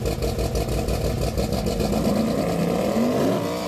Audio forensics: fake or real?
real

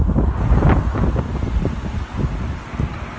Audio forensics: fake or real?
real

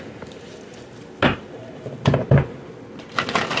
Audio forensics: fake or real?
real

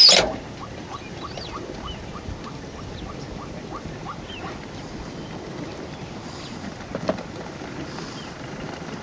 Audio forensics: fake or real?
real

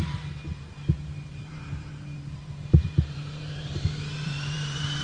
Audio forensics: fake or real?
fake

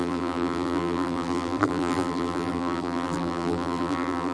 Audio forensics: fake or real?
fake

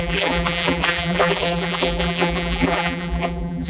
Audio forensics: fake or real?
fake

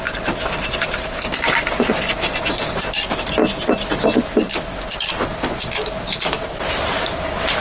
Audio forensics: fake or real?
real